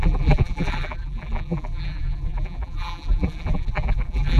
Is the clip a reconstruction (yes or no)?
yes